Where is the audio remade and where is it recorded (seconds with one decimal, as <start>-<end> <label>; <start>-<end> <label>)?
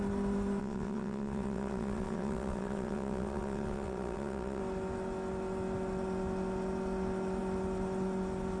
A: 0.0-0.6 recorded; 0.6-4.6 remade; 4.6-8.6 recorded